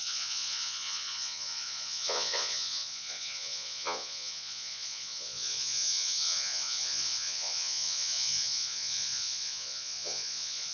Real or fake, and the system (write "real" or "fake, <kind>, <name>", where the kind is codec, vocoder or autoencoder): fake, vocoder, Vocos